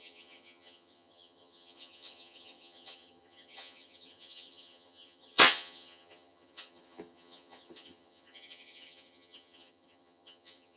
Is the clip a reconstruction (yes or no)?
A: yes